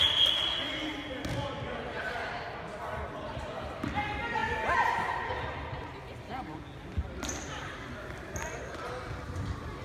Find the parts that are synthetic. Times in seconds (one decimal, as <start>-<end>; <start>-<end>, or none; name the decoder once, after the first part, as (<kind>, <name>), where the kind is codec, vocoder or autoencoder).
none